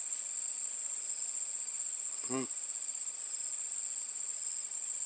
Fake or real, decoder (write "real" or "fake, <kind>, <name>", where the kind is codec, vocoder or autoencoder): fake, vocoder, Vocos